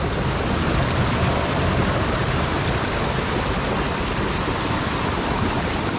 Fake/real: real